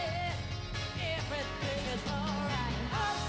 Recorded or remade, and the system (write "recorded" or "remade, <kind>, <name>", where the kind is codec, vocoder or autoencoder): recorded